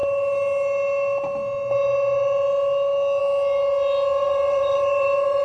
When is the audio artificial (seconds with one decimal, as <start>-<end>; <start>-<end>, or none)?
4.2-5.4